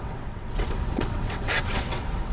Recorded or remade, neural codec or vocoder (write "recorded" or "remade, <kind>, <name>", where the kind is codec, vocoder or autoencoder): remade, vocoder, WaveNeXt